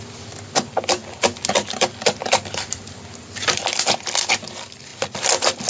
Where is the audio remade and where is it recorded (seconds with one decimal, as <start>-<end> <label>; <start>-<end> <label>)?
0.0-5.7 recorded